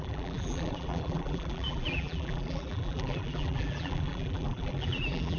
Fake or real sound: fake